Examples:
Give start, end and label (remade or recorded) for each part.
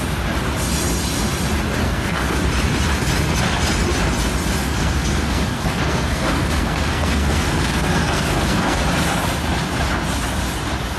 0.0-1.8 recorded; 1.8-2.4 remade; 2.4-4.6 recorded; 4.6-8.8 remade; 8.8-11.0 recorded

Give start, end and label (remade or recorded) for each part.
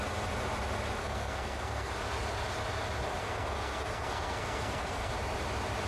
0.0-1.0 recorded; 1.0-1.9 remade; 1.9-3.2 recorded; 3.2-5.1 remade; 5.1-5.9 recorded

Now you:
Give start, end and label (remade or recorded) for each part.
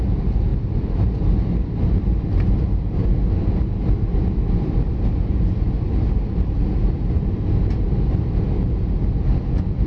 0.0-9.9 recorded